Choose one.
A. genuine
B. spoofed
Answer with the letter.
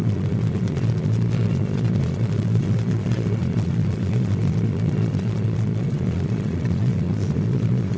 B